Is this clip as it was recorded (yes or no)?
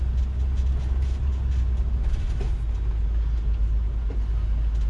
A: yes